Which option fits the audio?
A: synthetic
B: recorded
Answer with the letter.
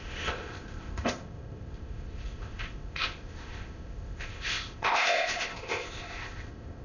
A